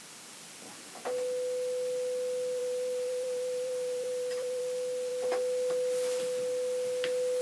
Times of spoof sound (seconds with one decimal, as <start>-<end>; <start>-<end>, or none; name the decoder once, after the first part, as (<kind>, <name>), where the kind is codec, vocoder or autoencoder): 2.6-4.6 (vocoder, BigVGAN v2)